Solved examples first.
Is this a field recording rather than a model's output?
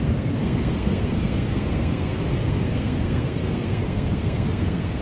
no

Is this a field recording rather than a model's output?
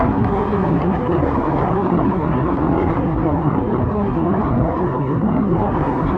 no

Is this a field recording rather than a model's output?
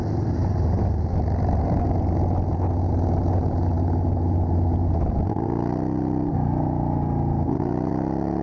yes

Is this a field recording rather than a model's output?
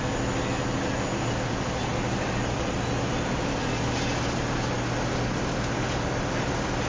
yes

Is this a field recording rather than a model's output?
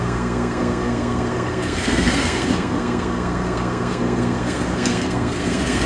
no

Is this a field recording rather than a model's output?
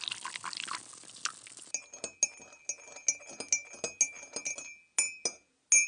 yes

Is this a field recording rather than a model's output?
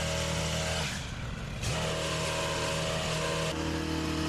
yes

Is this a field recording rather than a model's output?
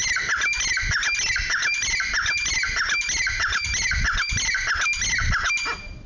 yes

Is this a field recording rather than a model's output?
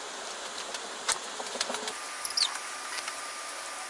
yes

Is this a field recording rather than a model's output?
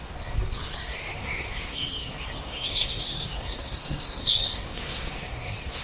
no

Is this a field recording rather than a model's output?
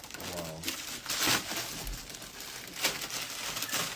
yes